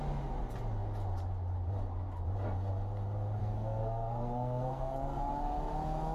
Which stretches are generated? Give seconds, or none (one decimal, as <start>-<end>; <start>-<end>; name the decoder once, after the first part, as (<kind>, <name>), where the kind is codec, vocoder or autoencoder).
3.4-5.3 (codec, SNAC)